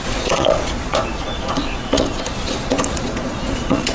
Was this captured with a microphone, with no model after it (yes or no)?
no